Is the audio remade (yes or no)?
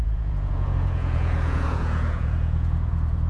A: yes